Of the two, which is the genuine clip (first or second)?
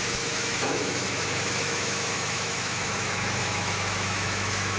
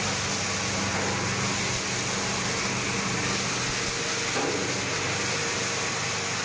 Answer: second